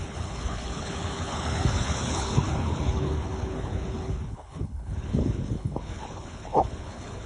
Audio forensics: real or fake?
fake